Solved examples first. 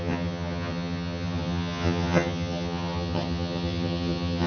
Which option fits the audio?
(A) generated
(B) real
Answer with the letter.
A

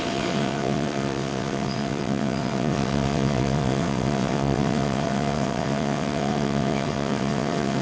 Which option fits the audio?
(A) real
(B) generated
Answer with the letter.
B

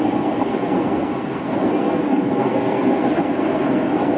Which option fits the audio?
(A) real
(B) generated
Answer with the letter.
B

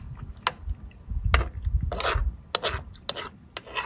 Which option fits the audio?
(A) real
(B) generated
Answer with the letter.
A